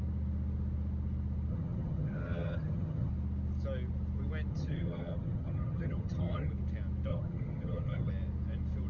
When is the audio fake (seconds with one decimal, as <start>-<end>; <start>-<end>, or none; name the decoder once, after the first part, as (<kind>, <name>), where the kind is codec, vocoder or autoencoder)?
1.5-3.1 (vocoder, HiFi-GAN); 4.5-6.5; 7.1-8.1